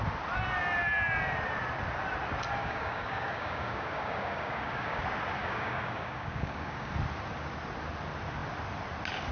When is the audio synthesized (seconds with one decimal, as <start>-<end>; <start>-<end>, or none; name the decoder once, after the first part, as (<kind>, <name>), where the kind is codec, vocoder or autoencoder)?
2.6-5.0 (codec, DAC); 5.4-6.9